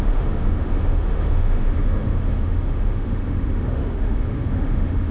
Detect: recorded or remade remade